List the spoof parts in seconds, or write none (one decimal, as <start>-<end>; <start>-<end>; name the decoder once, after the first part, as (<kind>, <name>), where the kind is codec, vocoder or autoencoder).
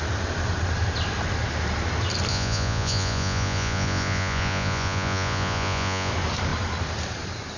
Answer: 2.3-6.1 (vocoder, Vocos)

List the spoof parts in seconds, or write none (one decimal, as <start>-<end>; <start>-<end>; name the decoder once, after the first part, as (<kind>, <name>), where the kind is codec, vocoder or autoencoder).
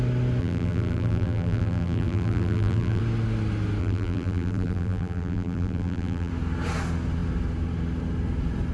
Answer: 0.4-3.0 (vocoder, BigVGAN v2); 3.8-6.3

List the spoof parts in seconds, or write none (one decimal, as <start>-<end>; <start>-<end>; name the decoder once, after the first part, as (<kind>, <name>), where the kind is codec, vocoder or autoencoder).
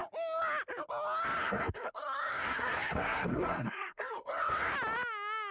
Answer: 1.4-4.7 (codec, SNAC)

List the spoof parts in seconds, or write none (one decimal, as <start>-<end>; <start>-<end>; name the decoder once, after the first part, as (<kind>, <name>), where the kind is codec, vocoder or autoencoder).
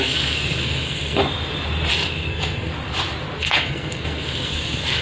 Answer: 0.0-1.2 (codec, SNAC); 1.9-2.7; 3.4-5.0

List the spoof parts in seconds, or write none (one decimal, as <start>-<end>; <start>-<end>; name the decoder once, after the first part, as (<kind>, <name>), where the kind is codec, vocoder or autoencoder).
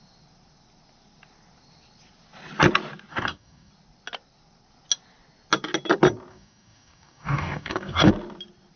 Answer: 3.1-3.7 (codec, DAC); 6.3-8.1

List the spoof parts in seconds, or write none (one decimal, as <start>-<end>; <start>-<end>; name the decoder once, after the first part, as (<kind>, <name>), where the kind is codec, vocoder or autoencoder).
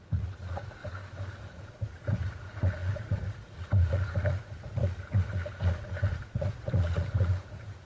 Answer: 0.0-0.8 (vocoder, Vocos); 1.4-7.9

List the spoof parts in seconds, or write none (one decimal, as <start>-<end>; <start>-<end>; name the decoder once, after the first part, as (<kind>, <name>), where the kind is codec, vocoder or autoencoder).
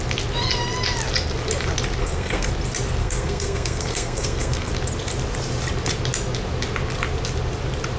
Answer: 2.0-2.5 (codec, SNAC); 3.0-4.7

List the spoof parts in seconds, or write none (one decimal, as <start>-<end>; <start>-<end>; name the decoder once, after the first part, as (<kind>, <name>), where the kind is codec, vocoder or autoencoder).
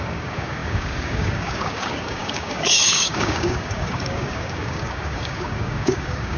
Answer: 0.0-6.4 (codec, DAC)